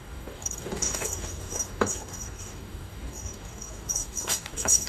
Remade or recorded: remade